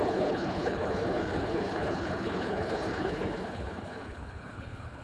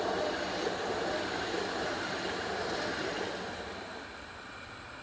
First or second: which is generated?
first